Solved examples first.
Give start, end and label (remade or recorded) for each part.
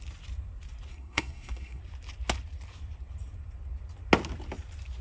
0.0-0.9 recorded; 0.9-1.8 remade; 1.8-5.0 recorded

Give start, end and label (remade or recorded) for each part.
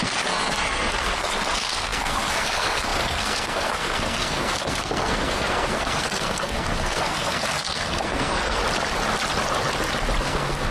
0.0-8.6 remade; 8.6-10.2 recorded; 10.2-10.7 remade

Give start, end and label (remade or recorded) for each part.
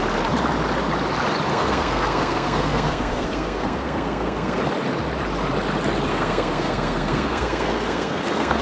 0.0-1.5 recorded; 1.5-4.6 remade; 4.6-6.1 recorded; 6.1-8.6 remade